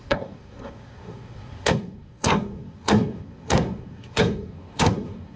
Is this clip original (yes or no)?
no